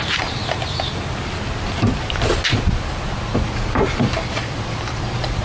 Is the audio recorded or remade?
recorded